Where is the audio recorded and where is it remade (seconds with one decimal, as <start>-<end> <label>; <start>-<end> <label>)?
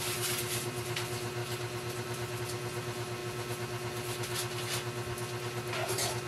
0.0-1.4 recorded; 1.4-2.4 remade; 2.4-6.3 recorded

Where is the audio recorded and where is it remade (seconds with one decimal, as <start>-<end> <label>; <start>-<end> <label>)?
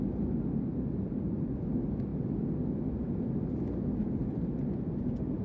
0.0-5.4 recorded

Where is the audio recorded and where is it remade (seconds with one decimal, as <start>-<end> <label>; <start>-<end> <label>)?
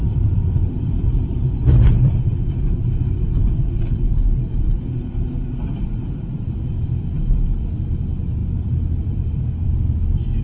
0.0-10.4 remade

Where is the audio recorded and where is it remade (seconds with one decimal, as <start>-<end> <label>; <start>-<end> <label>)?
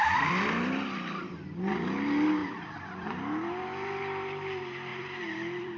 0.0-5.8 remade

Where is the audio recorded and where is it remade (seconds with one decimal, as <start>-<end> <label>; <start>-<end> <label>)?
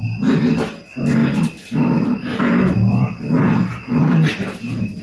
0.0-1.2 recorded; 1.2-2.4 remade; 2.4-3.7 recorded; 3.7-5.0 remade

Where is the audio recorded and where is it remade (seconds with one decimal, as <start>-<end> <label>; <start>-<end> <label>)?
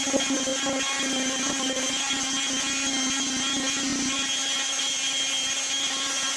0.0-6.4 recorded